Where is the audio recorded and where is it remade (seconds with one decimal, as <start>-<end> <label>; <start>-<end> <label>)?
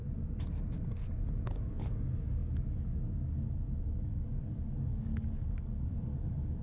0.0-1.5 recorded; 1.5-6.6 remade